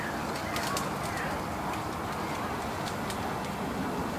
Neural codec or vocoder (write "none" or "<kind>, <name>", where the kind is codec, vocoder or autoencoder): none